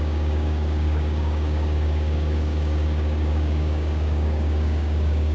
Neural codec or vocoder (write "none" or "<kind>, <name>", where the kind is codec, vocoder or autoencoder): codec, DAC